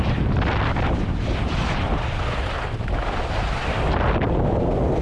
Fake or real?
real